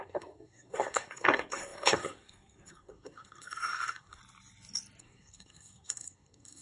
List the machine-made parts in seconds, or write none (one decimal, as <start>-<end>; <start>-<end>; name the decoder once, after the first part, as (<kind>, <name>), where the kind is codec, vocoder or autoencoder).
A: 0.0-4.2 (codec, SNAC); 5.0-6.6

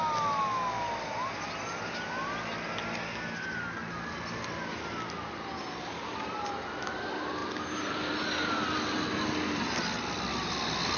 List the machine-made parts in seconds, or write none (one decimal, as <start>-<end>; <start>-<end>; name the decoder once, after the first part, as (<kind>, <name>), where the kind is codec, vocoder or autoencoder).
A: none

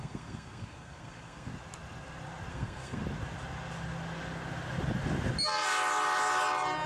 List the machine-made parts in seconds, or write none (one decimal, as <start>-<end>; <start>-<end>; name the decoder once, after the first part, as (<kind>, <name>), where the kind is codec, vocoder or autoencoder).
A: 0.0-1.5 (codec, SNAC); 2.5-3.0